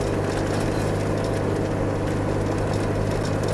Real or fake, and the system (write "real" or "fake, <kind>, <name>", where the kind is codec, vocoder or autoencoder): real